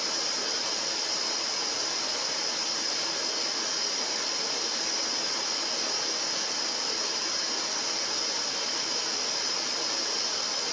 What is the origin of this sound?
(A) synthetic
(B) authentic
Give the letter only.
B